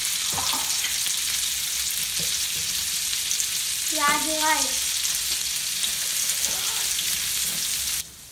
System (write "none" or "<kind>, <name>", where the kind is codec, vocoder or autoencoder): none